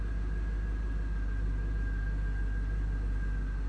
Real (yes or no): yes